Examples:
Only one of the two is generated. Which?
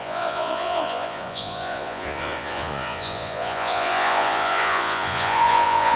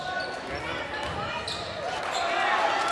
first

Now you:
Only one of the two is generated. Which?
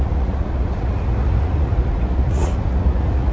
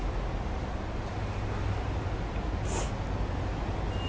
first